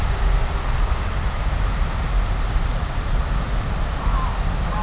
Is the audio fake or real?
real